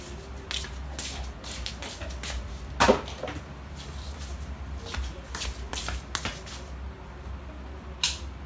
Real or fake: real